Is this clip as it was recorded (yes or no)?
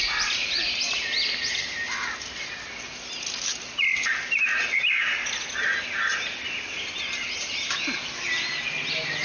yes